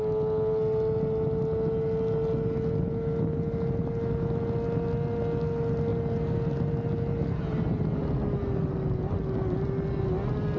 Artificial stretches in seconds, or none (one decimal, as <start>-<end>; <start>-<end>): none

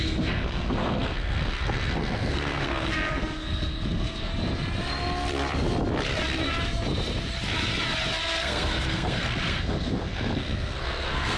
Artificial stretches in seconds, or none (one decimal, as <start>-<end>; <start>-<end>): 0.0-4.3; 8.2-11.4

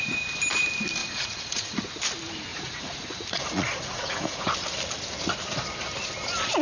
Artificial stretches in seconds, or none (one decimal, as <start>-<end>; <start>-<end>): 1.0-1.8; 2.5-4.4

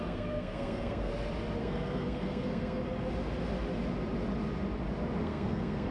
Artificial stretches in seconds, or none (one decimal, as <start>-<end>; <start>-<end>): 0.0-1.1; 1.6-2.8; 5.2-5.9

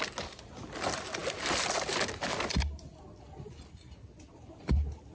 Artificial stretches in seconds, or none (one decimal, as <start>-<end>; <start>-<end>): none

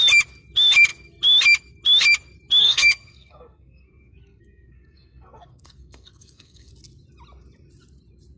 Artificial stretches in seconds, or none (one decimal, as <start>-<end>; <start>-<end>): 2.6-6.7

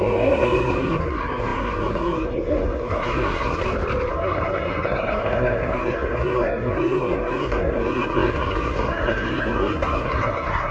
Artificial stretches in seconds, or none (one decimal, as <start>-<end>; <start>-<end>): 0.0-3.6; 4.1-10.7

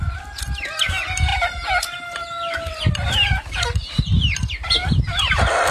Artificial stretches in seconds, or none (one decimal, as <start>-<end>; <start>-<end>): none